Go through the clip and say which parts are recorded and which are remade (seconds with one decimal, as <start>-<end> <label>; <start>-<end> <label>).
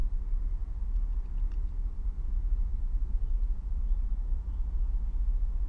0.0-2.7 recorded; 2.7-4.9 remade; 4.9-5.7 recorded